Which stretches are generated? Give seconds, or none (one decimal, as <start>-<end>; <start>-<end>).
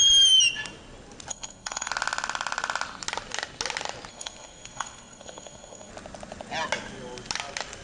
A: 1.3-1.9; 4.1-5.9